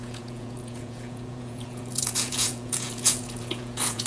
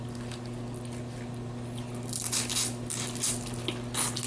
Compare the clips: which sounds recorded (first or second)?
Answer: second